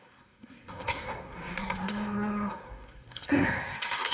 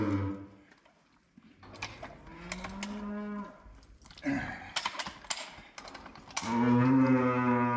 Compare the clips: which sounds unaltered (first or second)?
second